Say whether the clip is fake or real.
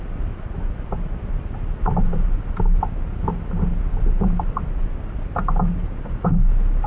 real